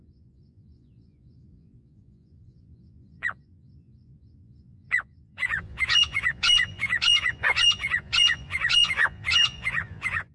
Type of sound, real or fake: fake